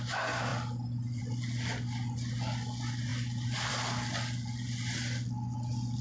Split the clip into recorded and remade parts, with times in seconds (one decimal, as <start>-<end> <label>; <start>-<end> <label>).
0.0-6.0 recorded